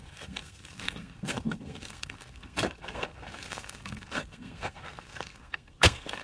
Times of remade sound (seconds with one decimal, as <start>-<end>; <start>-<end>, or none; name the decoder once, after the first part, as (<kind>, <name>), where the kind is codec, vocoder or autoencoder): 0.0-6.2 (codec, SNAC)